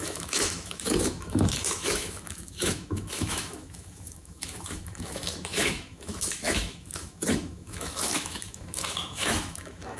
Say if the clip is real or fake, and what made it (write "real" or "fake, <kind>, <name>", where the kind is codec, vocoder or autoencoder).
fake, autoencoder, DAC-VAE